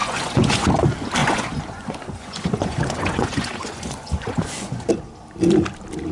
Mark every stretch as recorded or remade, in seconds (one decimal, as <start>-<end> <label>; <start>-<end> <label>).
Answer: 0.0-0.7 remade; 0.7-1.2 recorded; 1.2-4.9 remade; 4.9-6.1 recorded